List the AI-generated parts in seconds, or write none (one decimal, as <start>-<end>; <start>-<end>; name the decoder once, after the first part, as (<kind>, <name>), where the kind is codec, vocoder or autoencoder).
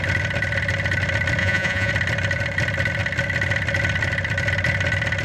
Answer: 1.4-1.9 (vocoder, Vocos)